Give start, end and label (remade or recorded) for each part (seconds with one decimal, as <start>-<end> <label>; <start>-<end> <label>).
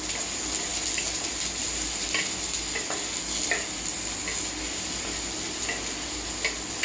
0.0-6.8 recorded